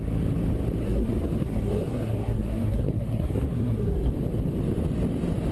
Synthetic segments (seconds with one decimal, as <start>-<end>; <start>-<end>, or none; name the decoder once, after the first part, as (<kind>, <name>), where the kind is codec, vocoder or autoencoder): 0.8-4.1 (codec, SNAC)